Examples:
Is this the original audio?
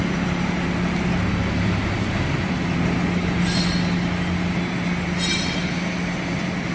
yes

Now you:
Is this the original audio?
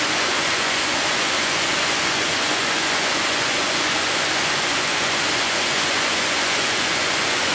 no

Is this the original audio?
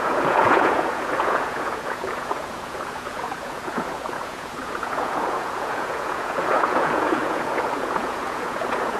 no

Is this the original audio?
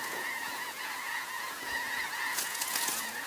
no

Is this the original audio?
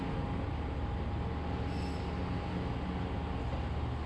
yes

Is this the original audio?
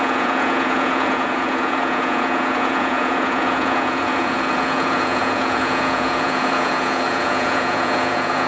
no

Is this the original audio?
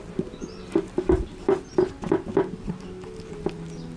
yes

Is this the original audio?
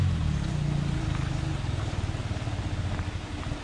yes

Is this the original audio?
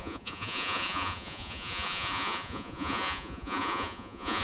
no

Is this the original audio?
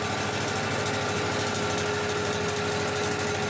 yes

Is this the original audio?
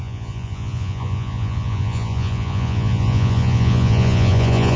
no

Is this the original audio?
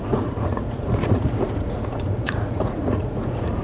no